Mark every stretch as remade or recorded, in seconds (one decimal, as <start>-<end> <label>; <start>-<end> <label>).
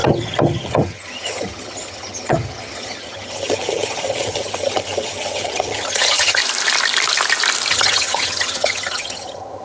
0.0-6.4 remade; 6.4-7.7 recorded; 7.7-9.6 remade